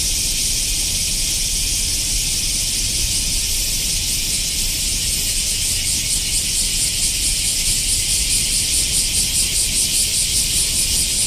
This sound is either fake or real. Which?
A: real